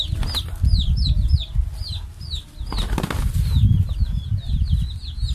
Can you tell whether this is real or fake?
real